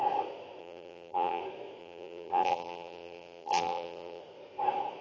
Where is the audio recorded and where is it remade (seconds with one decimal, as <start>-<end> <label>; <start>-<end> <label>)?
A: 0.0-0.6 recorded; 0.6-1.4 remade; 1.4-1.8 recorded; 1.8-4.2 remade; 4.2-5.0 recorded